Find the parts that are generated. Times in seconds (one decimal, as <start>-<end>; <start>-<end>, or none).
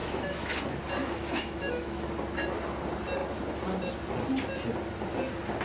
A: 0.0-0.6; 1.0-2.1